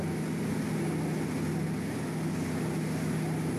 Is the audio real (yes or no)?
yes